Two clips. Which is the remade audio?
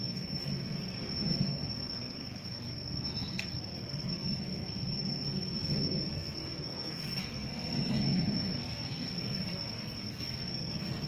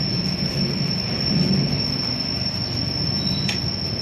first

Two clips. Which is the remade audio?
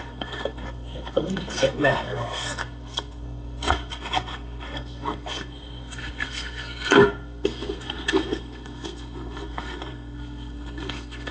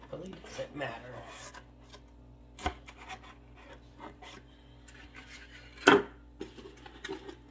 first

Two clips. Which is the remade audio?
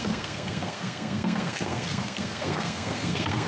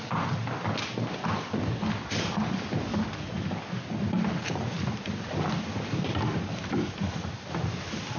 first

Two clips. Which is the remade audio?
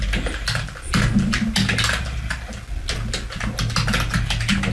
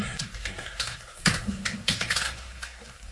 second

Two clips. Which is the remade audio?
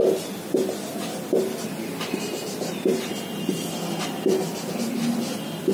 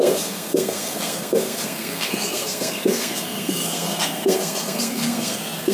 second